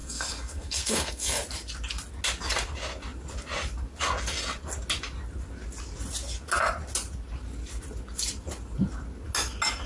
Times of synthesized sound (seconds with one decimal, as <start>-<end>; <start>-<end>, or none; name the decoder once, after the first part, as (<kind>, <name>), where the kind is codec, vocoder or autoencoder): 0.0-1.4 (codec, SNAC)